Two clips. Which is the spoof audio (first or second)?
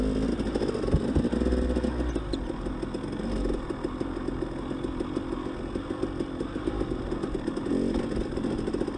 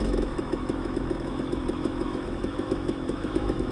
second